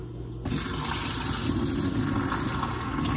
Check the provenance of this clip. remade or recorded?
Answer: recorded